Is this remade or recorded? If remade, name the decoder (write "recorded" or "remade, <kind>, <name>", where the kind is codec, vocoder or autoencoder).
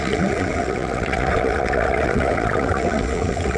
remade, vocoder, WaveNeXt